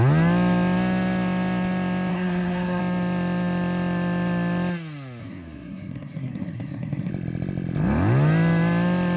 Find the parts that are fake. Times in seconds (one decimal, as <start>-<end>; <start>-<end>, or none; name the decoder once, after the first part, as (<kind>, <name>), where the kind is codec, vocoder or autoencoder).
2.1-2.8 (codec, SNAC); 5.2-7.1